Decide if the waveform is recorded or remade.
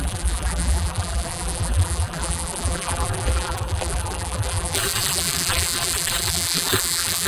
remade